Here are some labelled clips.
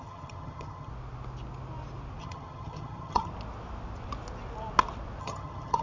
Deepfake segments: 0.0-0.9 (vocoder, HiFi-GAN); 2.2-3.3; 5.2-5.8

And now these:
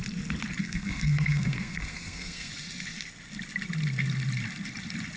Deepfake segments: 0.6-2.5 (codec, SNAC)

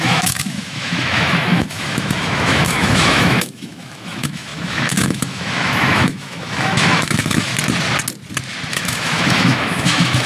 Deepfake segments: 0.0-7.5 (autoencoder, DAC-VAE); 8.7-10.3

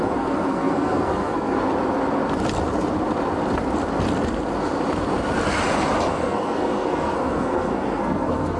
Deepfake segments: 0.0-1.7 (codec, SNAC); 6.1-8.6

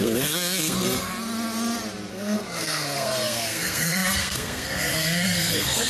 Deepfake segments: 0.0-1.1 (codec, SNAC); 2.1-5.9

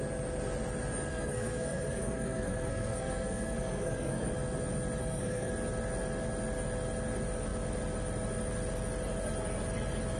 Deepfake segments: 1.1-4.3 (codec, SNAC); 5.0-5.5

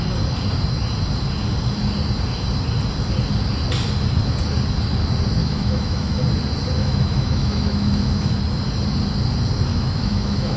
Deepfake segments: 5.4-6.2 (autoencoder, DAC-VAE); 6.8-8.4; 9.7-10.6

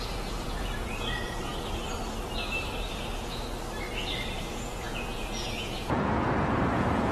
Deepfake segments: 0.0-1.5 (vocoder, Vocos); 2.8-3.4; 4.4-7.1